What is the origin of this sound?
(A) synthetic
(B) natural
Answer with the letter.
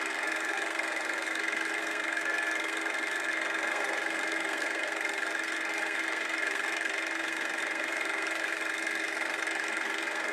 A